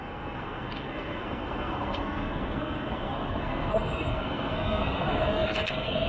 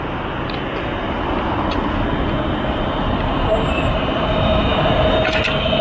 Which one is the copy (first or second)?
first